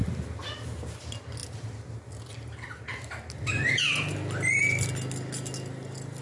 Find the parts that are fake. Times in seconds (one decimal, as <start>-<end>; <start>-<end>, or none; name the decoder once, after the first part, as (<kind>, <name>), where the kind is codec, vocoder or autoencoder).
none